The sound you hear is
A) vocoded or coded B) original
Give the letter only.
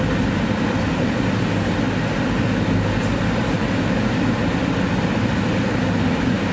B